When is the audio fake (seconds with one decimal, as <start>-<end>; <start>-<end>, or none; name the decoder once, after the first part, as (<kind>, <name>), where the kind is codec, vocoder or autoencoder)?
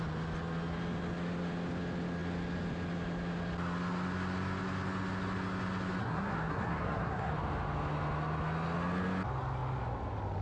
6.0-7.3 (codec, SNAC)